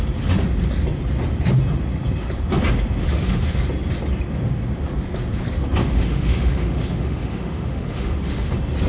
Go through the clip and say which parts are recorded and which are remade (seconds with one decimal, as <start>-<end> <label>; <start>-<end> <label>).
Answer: 0.0-3.1 recorded; 3.1-3.6 remade; 3.6-5.8 recorded; 5.8-8.5 remade; 8.5-8.9 recorded